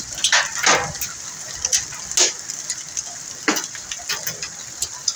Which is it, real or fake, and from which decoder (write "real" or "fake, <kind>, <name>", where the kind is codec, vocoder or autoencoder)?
real